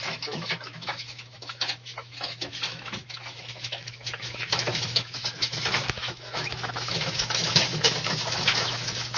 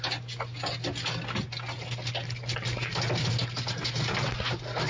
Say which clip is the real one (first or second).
second